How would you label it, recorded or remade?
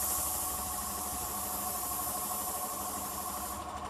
recorded